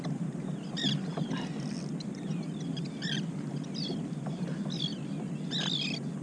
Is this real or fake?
real